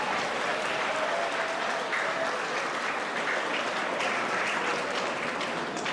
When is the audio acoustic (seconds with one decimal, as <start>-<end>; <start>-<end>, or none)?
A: 0.0-0.5; 4.0-5.9